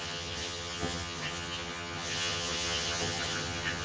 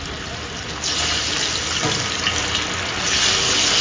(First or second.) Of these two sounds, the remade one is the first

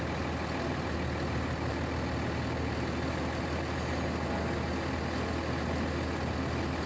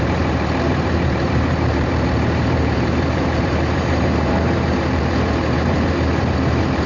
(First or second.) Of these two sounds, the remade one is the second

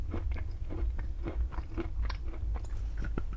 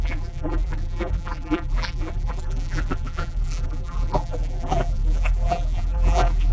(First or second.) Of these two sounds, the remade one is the second